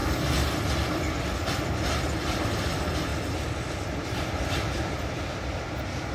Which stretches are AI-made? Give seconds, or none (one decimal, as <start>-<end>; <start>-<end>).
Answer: 3.1-5.6